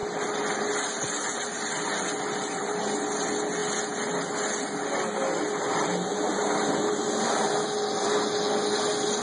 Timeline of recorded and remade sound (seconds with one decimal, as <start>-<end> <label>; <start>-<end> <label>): 0.0-9.2 recorded